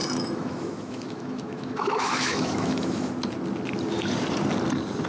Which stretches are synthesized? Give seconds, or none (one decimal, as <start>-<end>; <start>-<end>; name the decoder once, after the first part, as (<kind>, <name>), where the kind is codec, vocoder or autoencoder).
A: 0.0-3.1 (autoencoder, DAC-VAE)